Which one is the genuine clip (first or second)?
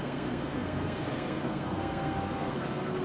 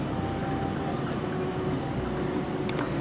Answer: second